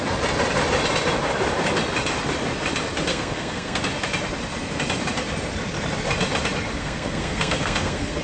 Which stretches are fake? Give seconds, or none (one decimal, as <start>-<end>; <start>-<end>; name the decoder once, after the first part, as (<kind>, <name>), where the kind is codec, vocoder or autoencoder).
3.1-3.8 (codec, SNAC); 6.8-8.2